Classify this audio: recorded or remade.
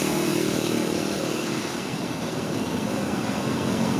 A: remade